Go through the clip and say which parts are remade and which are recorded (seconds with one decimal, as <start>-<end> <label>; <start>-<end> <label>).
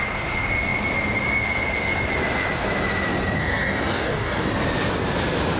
0.0-3.4 recorded; 3.4-4.5 remade; 4.5-5.6 recorded